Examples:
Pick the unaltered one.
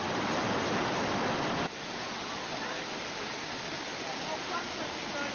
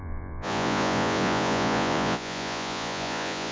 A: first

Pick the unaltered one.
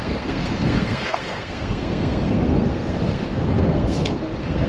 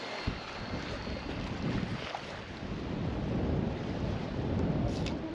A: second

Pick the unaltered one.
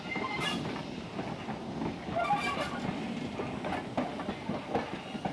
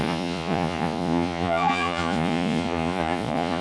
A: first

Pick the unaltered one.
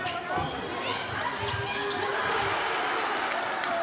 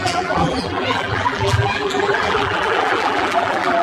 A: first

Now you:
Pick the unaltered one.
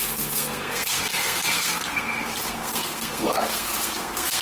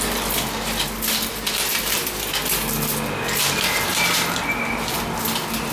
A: second